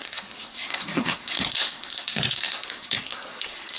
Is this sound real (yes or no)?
no